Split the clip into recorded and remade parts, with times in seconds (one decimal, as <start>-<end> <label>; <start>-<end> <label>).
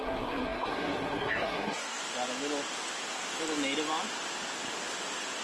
0.0-2.0 remade; 2.0-5.4 recorded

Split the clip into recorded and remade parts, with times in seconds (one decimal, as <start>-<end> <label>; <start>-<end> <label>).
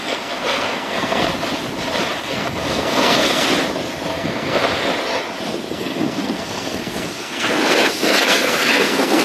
0.0-1.3 remade; 1.3-2.2 recorded; 2.2-3.5 remade; 3.5-4.1 recorded; 4.1-4.6 remade; 4.6-5.7 recorded; 5.7-9.2 remade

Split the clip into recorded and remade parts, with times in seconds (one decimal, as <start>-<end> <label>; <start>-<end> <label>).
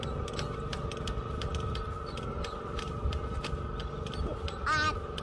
0.0-5.2 recorded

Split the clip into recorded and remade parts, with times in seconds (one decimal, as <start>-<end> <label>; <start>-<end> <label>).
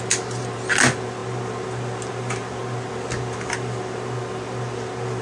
0.0-5.2 recorded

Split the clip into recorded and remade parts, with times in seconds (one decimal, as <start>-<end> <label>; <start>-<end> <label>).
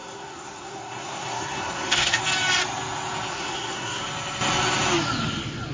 0.0-2.2 remade; 2.2-3.3 recorded; 3.3-4.0 remade; 4.0-5.7 recorded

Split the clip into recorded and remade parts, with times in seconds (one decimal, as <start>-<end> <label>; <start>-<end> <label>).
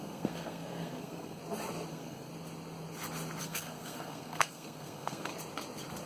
0.0-1.4 remade; 1.4-1.9 recorded; 1.9-2.3 remade; 2.3-3.4 recorded; 3.4-5.3 remade; 5.3-6.1 recorded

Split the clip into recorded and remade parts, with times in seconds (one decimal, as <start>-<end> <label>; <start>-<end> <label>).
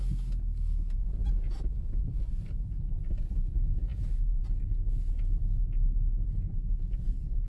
0.0-7.5 recorded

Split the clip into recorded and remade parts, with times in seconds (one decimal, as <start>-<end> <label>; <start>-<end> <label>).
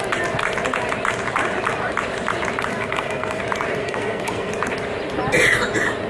0.0-2.7 recorded; 2.7-3.4 remade; 3.4-3.8 recorded; 3.8-4.5 remade; 4.5-6.1 recorded